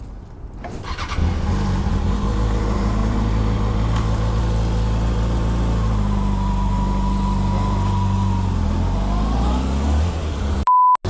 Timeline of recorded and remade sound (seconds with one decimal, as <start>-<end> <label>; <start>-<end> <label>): 0.0-11.1 recorded